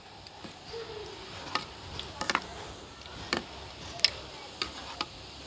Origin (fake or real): real